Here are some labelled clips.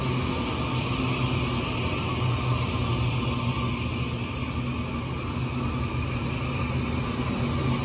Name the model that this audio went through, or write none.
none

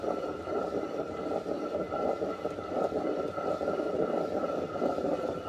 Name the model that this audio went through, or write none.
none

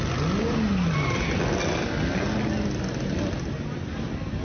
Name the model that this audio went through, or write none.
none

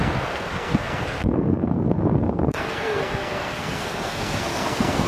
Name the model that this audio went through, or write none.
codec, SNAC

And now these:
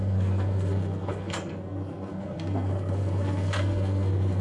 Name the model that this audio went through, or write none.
codec, SNAC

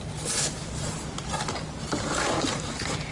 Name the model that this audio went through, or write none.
none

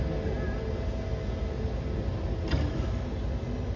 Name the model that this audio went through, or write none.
none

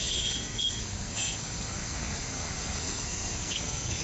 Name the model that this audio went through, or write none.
codec, SNAC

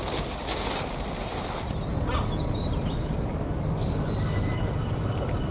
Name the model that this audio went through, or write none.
vocoder, BigVGAN v2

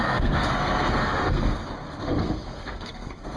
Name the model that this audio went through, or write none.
codec, SNAC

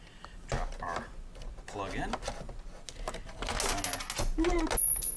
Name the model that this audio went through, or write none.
none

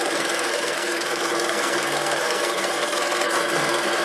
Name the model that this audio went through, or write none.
codec, SNAC